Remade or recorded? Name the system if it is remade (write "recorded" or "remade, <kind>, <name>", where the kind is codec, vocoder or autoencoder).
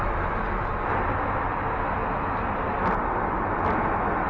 recorded